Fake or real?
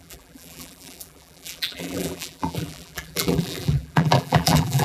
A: fake